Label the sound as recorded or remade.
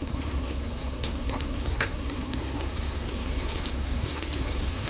remade